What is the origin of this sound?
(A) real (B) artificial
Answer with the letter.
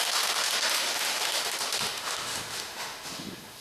B